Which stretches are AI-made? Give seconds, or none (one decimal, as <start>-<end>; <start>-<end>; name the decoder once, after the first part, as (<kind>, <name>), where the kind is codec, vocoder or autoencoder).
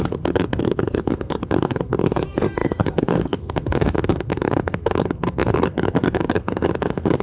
0.0-7.2 (codec, SNAC)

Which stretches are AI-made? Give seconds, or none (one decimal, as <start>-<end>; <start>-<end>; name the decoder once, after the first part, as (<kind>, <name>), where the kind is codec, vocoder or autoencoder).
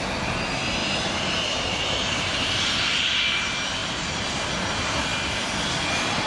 0.8-2.8 (vocoder, BigVGAN v2); 3.8-4.4; 5.1-6.3